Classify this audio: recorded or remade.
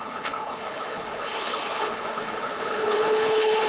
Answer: remade